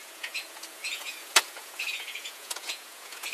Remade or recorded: remade